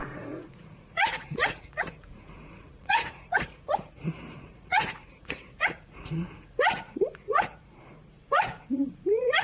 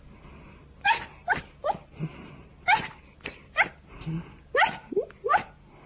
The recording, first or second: second